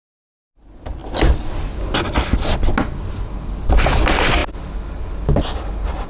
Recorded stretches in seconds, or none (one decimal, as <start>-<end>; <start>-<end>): 0.0-6.1